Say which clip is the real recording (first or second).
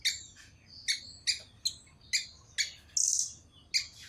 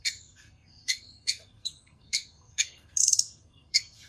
first